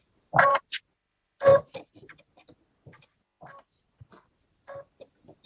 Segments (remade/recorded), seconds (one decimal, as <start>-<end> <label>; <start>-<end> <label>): 0.0-0.5 remade; 0.5-1.1 recorded; 1.1-1.5 remade; 1.5-4.4 recorded; 4.4-5.5 remade